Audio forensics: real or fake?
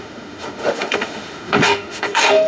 fake